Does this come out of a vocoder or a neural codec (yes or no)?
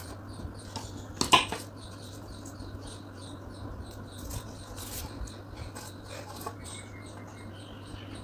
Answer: no